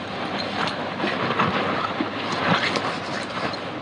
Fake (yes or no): no